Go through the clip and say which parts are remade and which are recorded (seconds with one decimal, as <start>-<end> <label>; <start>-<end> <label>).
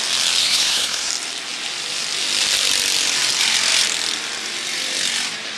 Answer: 0.0-0.4 recorded; 0.4-1.1 remade; 1.1-5.6 recorded